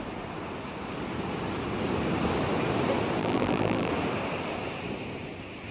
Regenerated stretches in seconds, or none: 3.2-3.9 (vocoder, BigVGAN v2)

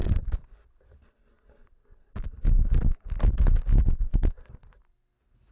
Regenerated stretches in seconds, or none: 0.0-1.5 (vocoder, BigVGAN v2); 1.9-3.2

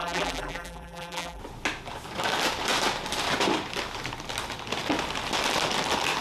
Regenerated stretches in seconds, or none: 0.0-1.4 (vocoder, BigVGAN v2)